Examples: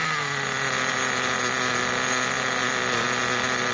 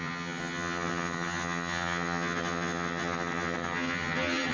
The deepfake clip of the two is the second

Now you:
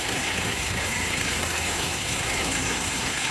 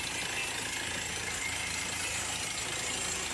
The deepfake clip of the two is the first